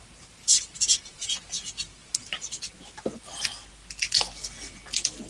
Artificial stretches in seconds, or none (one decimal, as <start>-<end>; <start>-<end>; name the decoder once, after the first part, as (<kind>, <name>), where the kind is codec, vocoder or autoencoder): 0.9-1.4 (vocoder, Vocos)